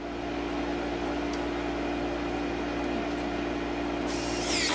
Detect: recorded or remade recorded